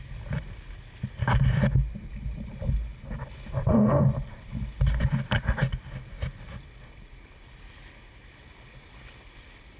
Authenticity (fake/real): real